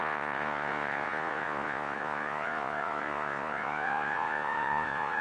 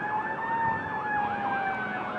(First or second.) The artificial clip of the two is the first